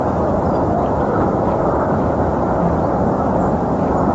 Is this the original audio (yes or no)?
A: no